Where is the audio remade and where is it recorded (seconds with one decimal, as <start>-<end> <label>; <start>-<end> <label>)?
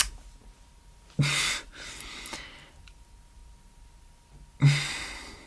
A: 0.0-5.5 recorded